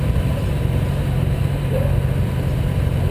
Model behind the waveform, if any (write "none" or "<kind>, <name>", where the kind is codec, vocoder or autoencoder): vocoder, BigVGAN v2